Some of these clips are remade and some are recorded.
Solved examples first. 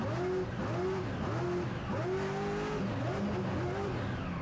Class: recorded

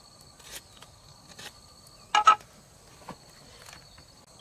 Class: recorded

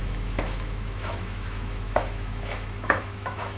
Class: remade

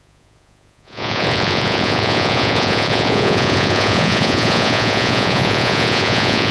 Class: remade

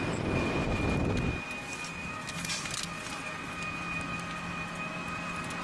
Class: recorded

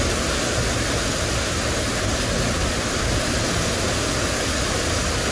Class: recorded